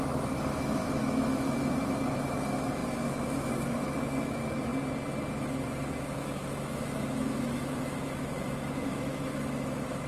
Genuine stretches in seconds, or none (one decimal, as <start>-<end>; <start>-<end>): 4.7-5.3